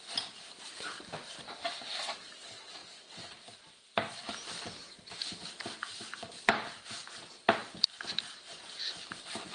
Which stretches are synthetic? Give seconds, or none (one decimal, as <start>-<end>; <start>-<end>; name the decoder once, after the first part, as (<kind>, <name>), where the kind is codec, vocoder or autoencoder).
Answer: none